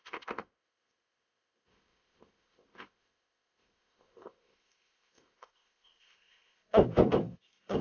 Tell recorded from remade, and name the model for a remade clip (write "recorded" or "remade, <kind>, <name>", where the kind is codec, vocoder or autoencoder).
remade, codec, ZipCodec